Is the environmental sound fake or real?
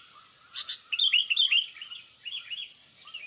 real